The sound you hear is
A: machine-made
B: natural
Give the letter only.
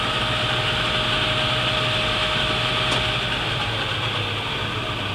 B